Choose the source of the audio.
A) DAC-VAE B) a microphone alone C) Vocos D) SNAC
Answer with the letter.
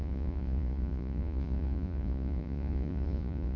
C